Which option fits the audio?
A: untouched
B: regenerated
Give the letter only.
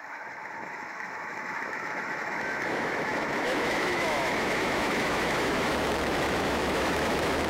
B